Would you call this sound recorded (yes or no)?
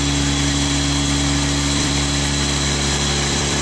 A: no